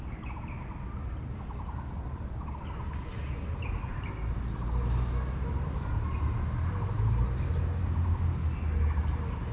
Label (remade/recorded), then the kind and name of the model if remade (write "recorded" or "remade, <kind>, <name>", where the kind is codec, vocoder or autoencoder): recorded